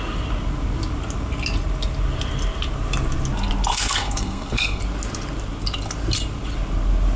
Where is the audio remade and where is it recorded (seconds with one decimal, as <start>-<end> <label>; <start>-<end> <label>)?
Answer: 0.0-3.7 recorded; 3.7-4.8 remade; 4.8-7.2 recorded